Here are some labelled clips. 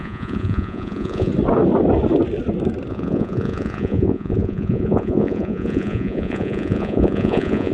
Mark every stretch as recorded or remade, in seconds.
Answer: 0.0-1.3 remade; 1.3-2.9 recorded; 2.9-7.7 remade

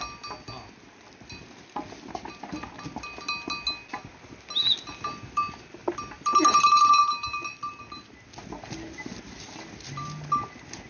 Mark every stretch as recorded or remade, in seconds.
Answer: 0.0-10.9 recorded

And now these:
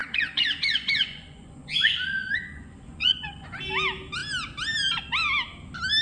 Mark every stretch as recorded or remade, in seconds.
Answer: 0.0-3.6 remade; 3.6-6.0 recorded

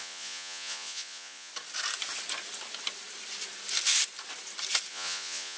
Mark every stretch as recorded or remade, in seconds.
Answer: 0.0-1.5 remade; 1.5-4.9 recorded; 4.9-5.6 remade